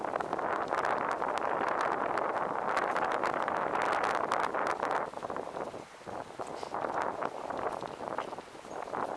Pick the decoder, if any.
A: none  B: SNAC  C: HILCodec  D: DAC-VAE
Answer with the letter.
A